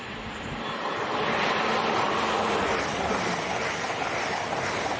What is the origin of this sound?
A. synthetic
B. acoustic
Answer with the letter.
B